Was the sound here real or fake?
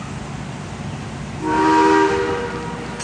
real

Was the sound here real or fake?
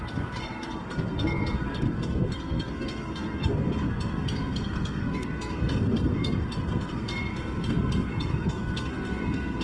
fake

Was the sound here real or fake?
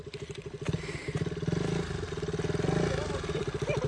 real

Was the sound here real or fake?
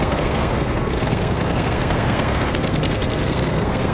fake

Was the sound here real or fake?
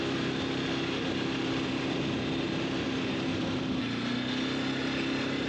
real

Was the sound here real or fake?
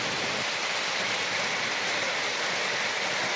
real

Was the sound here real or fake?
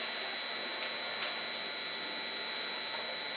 real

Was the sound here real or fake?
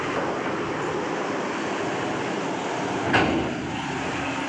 real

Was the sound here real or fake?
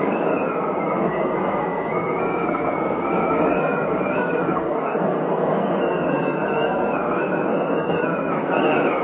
fake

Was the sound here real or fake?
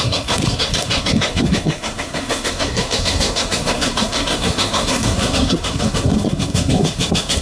fake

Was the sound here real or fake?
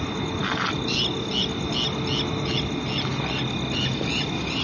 real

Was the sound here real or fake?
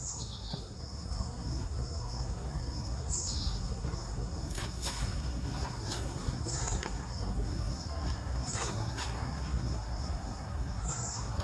fake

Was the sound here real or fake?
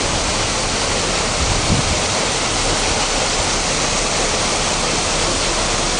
real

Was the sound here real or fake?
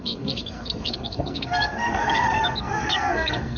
fake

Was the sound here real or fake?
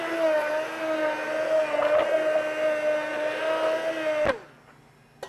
real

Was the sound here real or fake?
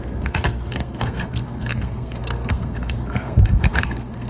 fake